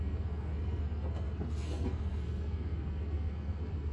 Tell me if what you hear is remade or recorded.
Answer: remade